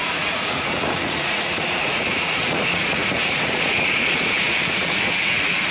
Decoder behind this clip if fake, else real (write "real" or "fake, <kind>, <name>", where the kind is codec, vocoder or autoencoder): fake, vocoder, Vocos